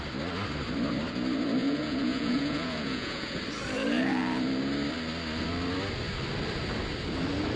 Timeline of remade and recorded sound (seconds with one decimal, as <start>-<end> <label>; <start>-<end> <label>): 0.0-1.6 recorded; 1.6-3.4 remade; 3.4-7.6 recorded